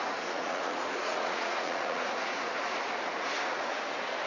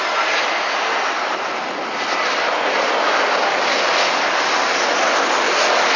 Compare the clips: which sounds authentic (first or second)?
second